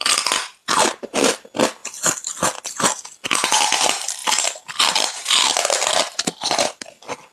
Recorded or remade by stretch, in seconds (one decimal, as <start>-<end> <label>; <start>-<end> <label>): 0.0-0.6 recorded; 0.6-1.3 remade; 1.3-7.3 recorded